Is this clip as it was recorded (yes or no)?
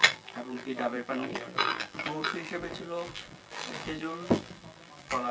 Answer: no